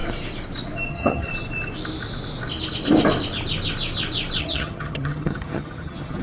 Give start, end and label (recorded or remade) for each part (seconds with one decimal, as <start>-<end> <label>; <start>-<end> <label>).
0.0-0.9 recorded; 0.9-1.3 remade; 1.3-4.4 recorded; 4.4-6.2 remade